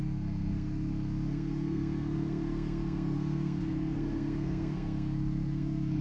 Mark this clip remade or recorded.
remade